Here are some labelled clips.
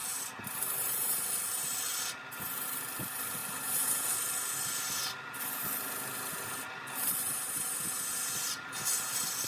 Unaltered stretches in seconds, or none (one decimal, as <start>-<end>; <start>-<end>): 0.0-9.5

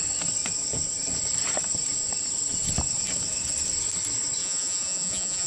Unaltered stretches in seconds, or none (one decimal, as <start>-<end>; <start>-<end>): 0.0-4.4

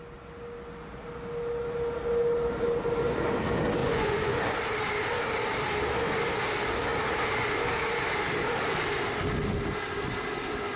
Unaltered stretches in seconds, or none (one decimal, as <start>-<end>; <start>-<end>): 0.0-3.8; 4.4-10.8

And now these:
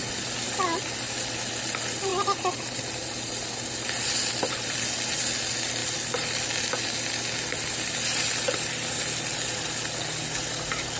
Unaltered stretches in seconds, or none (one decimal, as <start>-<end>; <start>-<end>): 0.0-11.0

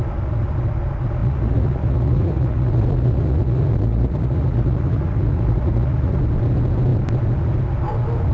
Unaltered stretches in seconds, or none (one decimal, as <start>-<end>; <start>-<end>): 0.0-1.2; 6.2-8.3